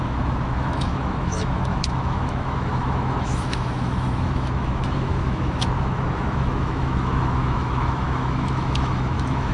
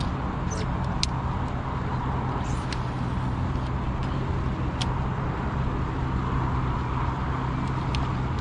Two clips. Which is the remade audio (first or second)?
first